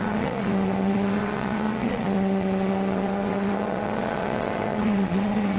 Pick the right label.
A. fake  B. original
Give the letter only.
A